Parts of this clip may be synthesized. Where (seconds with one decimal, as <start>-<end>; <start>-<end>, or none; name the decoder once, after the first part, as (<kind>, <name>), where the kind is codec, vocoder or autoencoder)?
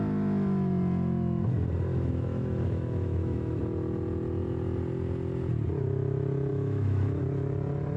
1.9-3.6 (autoencoder, DAC-VAE); 6.5-7.2